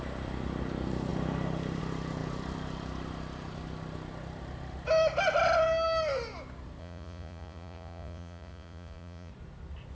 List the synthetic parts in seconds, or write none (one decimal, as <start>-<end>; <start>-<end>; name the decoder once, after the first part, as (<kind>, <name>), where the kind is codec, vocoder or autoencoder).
6.8-9.3 (vocoder, Vocos)